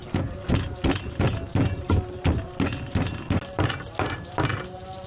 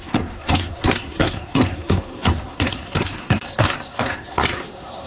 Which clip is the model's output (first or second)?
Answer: second